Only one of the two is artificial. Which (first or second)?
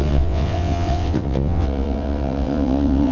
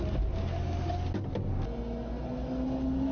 first